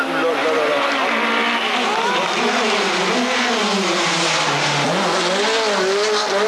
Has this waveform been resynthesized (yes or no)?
no